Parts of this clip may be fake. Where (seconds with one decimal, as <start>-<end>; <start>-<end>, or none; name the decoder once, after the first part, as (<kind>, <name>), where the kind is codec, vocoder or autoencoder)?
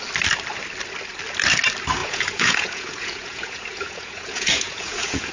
2.0-5.3 (vocoder, Vocos)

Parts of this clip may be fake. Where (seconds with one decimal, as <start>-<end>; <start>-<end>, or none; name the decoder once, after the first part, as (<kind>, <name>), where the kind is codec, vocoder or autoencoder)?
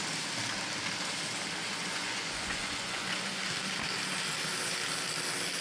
1.6-3.4 (vocoder, Vocos)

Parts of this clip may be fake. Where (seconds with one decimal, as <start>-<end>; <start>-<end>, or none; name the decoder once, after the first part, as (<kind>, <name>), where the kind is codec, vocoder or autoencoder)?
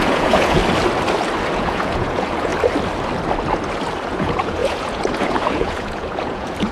0.0-0.6 (vocoder, Vocos); 1.5-2.5; 4.1-6.7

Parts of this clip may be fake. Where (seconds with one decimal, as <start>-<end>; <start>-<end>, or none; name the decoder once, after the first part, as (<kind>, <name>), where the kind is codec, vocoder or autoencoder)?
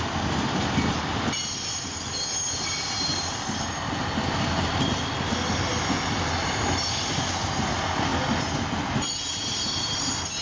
none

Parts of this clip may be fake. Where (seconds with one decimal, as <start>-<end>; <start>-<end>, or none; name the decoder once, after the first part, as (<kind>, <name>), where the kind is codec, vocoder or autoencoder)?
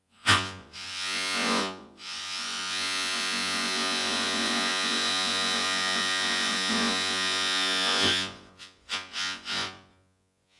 0.0-10.6 (vocoder, Vocos)